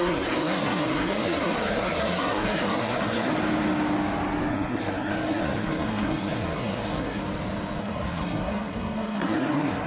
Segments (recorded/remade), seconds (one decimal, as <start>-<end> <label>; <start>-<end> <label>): 0.0-3.3 remade; 3.3-4.5 recorded; 4.5-7.2 remade; 7.2-7.8 recorded; 7.8-9.9 remade